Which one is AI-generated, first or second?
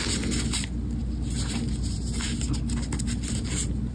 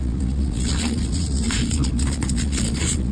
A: second